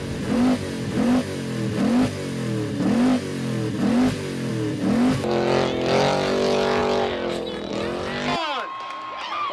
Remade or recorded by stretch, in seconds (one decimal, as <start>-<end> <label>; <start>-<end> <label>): 0.0-9.5 recorded